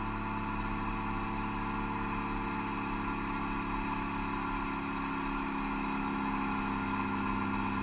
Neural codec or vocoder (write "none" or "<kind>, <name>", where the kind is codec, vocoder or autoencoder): none